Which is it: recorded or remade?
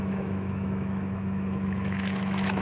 remade